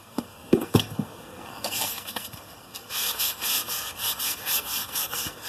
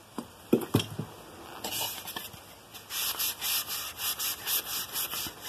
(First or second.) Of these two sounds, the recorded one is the second